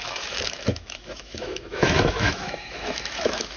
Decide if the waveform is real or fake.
fake